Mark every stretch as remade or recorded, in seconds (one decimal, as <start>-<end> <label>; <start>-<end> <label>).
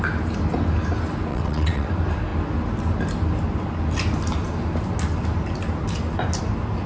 0.0-1.3 recorded; 1.3-1.9 remade; 1.9-6.9 recorded